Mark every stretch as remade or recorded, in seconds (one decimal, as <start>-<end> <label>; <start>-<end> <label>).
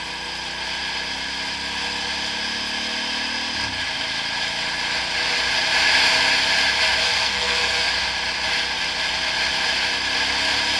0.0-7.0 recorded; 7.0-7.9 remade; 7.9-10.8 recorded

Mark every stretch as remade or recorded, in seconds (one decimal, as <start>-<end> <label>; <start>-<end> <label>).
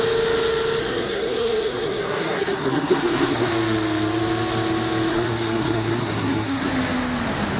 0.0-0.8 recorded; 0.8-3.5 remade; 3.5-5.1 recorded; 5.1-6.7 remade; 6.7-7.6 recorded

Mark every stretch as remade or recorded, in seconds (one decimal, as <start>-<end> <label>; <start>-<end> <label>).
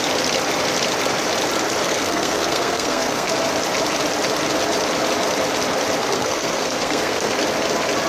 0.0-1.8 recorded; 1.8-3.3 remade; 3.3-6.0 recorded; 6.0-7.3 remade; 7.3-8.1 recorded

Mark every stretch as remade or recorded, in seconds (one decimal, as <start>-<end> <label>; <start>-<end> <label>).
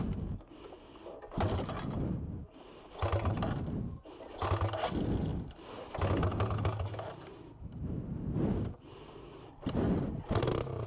0.0-10.9 recorded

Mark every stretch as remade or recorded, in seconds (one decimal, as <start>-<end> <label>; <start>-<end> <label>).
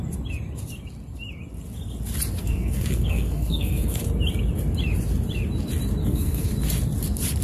0.0-2.4 recorded; 2.4-4.0 remade; 4.0-6.0 recorded; 6.0-6.5 remade; 6.5-7.4 recorded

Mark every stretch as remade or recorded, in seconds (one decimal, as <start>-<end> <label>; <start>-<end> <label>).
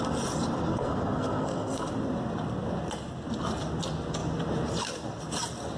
0.0-0.7 recorded; 0.7-1.9 remade; 1.9-5.8 recorded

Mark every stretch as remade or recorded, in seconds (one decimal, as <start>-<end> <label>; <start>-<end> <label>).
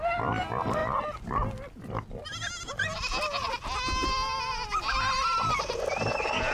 0.0-6.5 recorded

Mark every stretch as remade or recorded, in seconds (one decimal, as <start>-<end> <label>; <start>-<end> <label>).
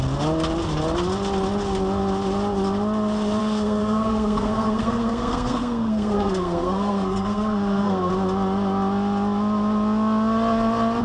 0.0-3.4 recorded; 3.4-8.1 remade; 8.1-11.0 recorded